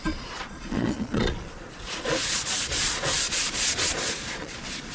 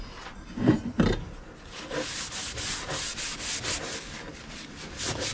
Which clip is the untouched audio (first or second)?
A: second